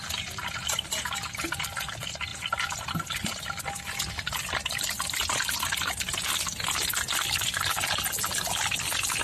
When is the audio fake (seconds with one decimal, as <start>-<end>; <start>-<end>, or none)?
none